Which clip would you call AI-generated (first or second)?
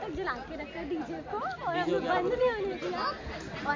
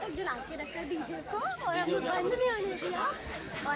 second